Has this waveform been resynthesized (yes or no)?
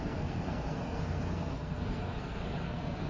yes